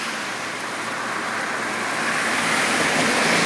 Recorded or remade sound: recorded